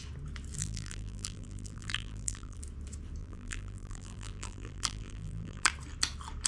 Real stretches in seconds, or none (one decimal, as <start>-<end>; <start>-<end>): 0.0-0.6; 2.6-3.2; 5.7-6.5